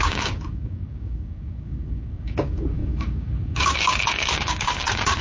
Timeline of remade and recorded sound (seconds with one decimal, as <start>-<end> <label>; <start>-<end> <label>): 0.0-5.2 remade